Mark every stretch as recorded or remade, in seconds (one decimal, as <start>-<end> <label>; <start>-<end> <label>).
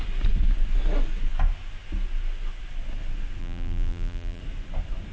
0.0-3.4 recorded; 3.4-4.4 remade; 4.4-5.1 recorded